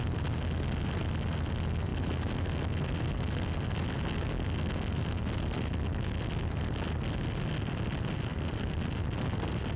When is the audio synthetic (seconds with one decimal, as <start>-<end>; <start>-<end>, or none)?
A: none